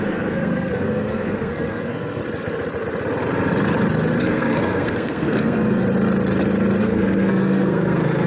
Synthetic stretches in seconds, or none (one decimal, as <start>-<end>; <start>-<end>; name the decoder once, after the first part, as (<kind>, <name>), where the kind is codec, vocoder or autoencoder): 0.0-2.2 (codec, SNAC); 4.2-5.8; 6.8-8.3